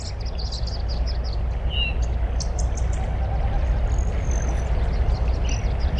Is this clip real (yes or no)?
yes